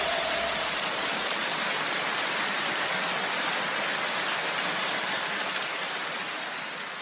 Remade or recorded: remade